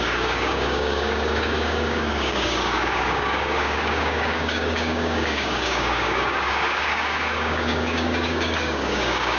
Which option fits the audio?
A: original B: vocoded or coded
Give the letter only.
B